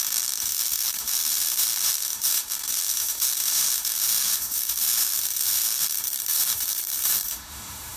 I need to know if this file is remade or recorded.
remade